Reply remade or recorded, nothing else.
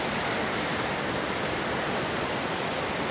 remade